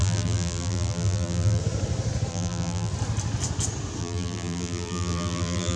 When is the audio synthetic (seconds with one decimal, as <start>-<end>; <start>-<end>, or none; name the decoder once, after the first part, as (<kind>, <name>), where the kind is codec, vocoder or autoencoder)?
0.0-1.6 (vocoder, BigVGAN v2); 2.3-2.9; 4.0-5.8